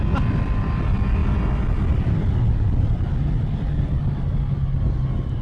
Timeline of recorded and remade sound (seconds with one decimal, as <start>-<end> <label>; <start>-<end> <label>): 0.0-5.4 recorded